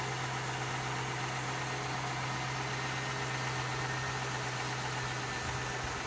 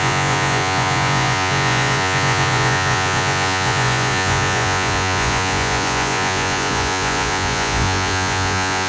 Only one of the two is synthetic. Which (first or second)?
second